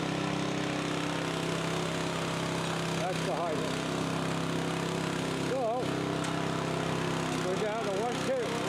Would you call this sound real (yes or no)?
yes